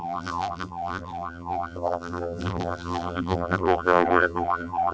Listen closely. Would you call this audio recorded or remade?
remade